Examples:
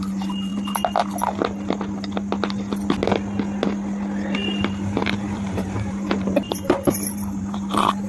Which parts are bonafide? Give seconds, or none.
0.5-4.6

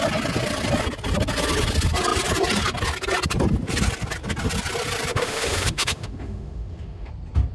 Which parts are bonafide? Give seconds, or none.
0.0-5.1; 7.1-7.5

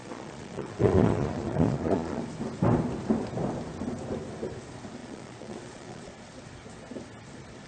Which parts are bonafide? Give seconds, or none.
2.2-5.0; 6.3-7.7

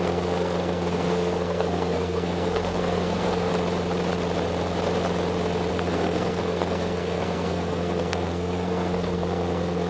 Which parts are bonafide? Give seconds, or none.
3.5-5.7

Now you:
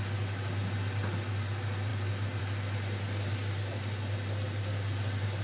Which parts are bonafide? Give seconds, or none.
0.0-5.4

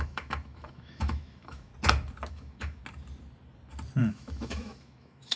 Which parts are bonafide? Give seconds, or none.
1.7-2.3; 2.8-4.0

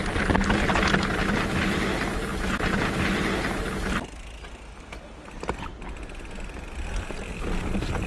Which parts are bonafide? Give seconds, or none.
0.0-2.3; 2.9-8.1

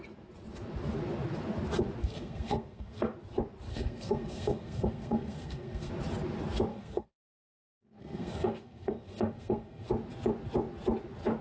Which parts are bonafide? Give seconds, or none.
0.0-2.0; 3.1-3.7; 5.9-6.7; 7.5-8.0; 9.9-11.4